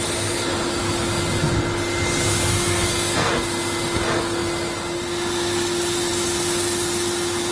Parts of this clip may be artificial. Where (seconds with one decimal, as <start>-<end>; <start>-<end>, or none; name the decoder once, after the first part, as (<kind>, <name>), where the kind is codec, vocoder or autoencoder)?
2.5-3.3 (codec, SNAC)